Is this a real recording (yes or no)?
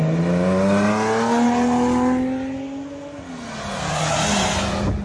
yes